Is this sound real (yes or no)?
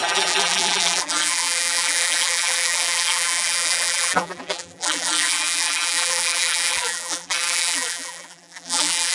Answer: no